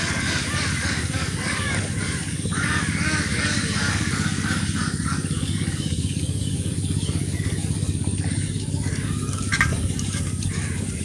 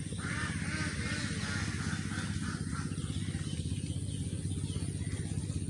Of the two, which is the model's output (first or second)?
first